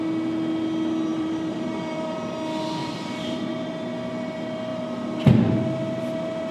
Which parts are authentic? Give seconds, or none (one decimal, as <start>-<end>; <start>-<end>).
0.0-1.1; 2.4-2.8; 3.7-6.5